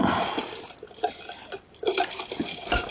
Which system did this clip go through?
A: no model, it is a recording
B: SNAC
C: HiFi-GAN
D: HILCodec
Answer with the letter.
A